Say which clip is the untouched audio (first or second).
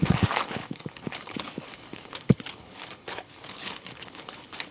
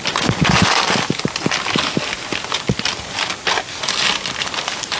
second